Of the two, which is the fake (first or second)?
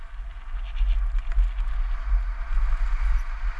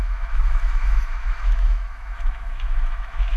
second